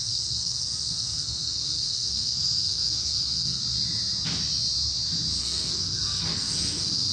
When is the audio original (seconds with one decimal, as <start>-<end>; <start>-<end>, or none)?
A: 3.6-5.4